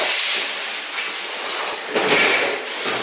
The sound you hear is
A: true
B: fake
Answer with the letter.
A